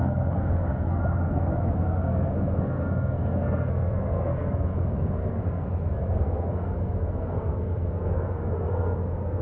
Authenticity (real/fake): fake